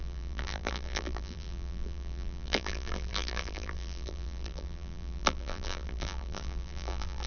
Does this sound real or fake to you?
fake